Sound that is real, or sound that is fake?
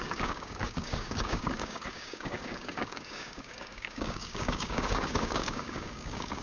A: fake